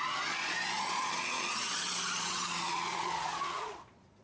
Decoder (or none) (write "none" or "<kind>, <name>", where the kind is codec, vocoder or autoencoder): vocoder, Vocos